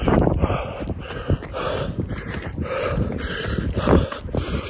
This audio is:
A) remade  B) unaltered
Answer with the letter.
A